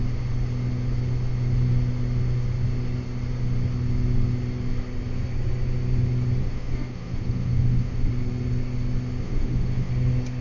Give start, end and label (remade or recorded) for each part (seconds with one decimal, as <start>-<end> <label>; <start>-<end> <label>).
0.0-6.4 recorded; 6.4-8.1 remade; 8.1-9.2 recorded; 9.2-9.9 remade; 9.9-10.4 recorded